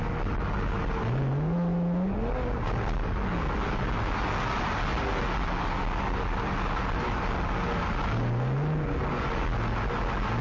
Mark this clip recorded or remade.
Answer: recorded